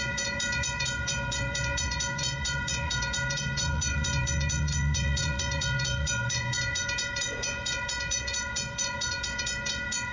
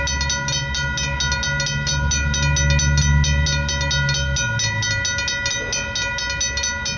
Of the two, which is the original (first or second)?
second